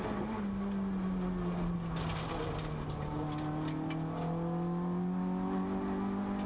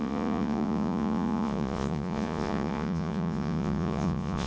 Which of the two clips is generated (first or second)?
second